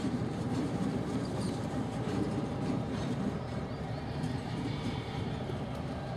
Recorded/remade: remade